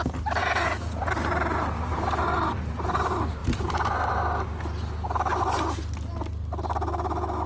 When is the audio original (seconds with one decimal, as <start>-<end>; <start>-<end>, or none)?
0.0-0.4; 1.1-7.5